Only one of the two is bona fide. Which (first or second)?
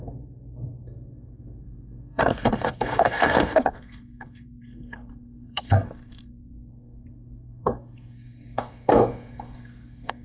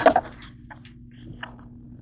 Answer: second